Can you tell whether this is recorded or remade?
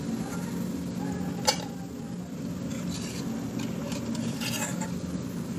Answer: recorded